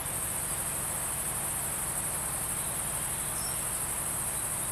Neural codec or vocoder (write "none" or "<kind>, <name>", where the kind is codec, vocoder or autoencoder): none